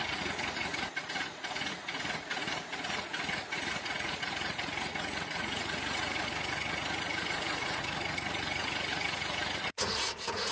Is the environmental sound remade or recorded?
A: remade